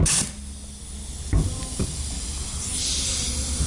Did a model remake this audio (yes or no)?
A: no